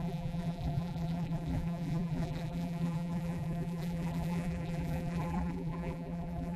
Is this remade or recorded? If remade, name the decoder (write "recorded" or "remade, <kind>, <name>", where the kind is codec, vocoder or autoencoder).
remade, vocoder, BigVGAN v2